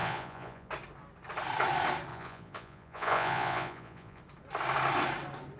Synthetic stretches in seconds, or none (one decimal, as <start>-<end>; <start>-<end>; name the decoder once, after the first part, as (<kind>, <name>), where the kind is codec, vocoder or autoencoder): 0.0-0.7 (vocoder, Vocos); 2.1-4.2